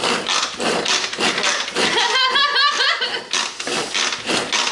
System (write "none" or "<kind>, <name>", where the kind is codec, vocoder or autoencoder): none